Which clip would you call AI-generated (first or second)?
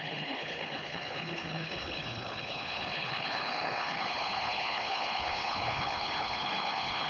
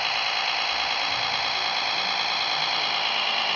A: first